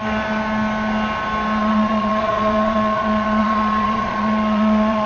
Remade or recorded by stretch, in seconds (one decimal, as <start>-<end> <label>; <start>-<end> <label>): 0.0-1.6 recorded; 1.6-5.1 remade